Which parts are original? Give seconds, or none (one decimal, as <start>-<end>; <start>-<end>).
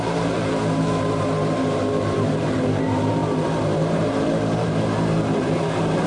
none